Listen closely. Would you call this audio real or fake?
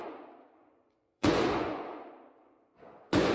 fake